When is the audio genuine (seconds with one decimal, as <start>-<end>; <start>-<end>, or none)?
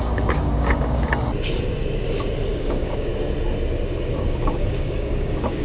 1.1-2.5; 3.1-4.0